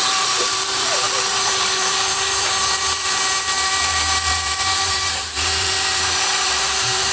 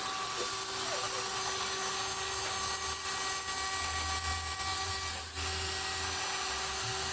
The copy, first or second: first